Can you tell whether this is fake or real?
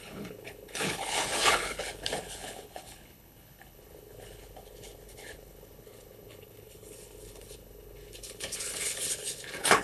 fake